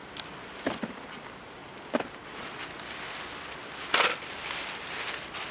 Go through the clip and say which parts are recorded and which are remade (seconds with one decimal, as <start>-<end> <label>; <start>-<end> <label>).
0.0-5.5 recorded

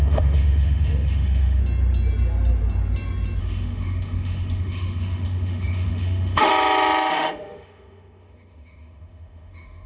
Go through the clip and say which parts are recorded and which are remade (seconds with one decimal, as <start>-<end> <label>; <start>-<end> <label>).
0.0-1.6 remade; 1.6-3.4 recorded; 3.4-6.5 remade; 6.5-7.1 recorded; 7.1-9.9 remade

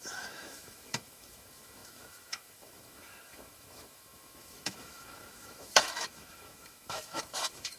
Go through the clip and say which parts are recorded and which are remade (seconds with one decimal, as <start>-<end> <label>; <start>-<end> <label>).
0.0-7.8 remade